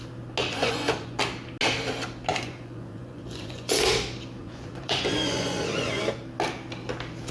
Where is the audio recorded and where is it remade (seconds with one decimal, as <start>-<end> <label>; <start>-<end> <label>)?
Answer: 0.0-0.4 recorded; 0.4-1.2 remade; 1.2-2.3 recorded; 2.3-3.9 remade; 3.9-4.4 recorded; 4.4-6.0 remade; 6.0-7.3 recorded